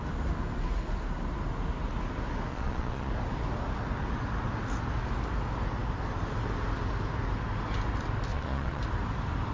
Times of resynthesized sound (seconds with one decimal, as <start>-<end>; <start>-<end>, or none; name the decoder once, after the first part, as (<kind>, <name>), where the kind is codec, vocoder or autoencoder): 2.5-3.1 (vocoder, Vocos); 8.3-8.8